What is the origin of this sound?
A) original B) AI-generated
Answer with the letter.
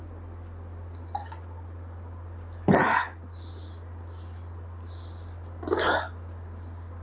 A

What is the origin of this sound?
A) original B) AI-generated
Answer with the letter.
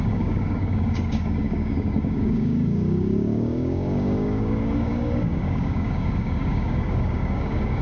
B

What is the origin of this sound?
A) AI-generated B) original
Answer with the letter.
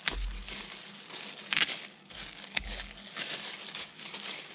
A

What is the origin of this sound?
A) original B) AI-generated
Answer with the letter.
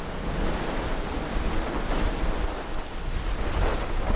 A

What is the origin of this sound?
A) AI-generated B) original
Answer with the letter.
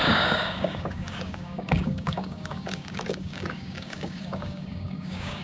A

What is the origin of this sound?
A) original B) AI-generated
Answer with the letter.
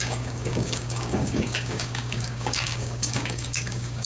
B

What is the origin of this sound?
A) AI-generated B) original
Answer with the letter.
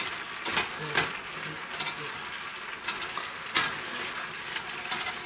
B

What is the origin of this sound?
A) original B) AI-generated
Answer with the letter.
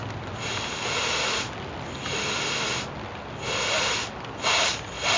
A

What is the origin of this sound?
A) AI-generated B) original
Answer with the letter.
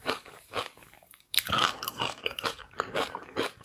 A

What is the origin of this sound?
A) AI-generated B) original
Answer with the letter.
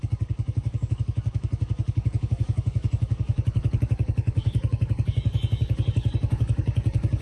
A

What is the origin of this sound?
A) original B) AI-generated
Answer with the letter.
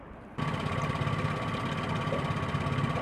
A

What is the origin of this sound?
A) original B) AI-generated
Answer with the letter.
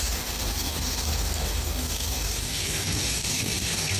B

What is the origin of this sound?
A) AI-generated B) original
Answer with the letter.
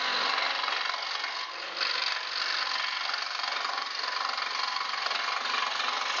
B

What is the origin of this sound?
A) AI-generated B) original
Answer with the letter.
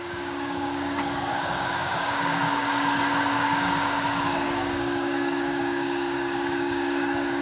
A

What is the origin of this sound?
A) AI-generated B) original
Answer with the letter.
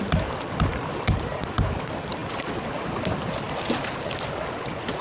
B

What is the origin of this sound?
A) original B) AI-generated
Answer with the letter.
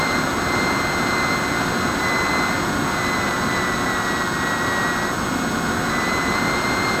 A